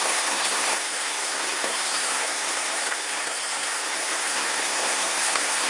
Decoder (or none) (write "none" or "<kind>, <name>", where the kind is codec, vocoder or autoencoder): codec, SNAC